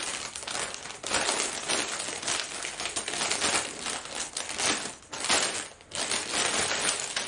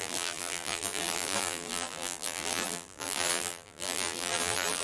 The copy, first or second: second